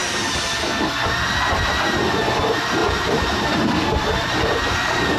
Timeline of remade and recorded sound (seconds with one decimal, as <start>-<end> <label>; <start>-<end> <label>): 0.0-2.8 recorded; 2.8-5.2 remade